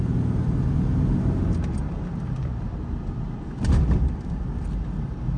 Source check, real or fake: real